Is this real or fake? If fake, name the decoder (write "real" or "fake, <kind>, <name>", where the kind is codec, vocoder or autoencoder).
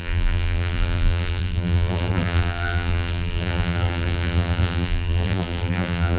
fake, vocoder, BigVGAN v2